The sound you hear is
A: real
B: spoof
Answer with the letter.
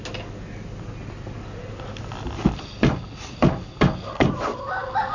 A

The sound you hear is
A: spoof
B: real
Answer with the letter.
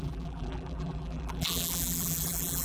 A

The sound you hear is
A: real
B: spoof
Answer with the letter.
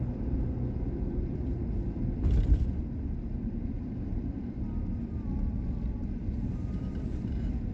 B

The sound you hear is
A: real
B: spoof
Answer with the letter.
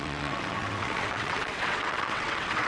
B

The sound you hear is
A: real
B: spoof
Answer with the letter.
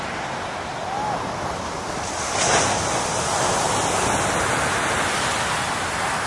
A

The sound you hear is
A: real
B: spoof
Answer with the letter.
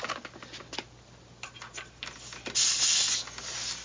A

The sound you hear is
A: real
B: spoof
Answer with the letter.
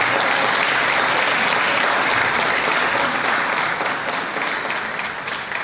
A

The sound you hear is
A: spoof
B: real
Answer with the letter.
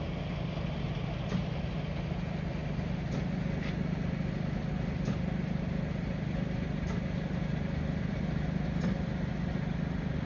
B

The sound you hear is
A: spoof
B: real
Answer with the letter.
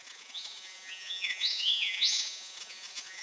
A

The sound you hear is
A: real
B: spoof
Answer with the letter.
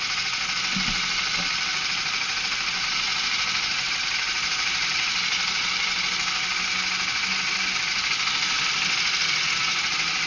A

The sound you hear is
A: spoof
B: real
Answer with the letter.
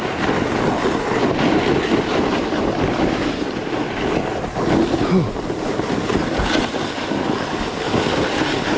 B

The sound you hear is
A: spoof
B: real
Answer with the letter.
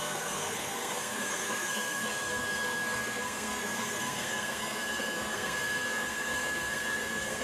A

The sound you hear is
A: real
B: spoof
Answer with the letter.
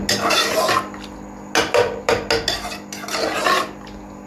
A